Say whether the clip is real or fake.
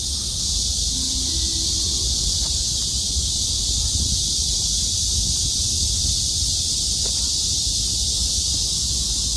real